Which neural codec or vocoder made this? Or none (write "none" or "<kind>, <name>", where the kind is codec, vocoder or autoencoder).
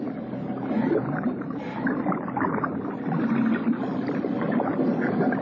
none